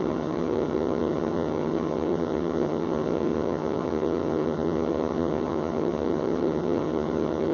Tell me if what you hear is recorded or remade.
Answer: remade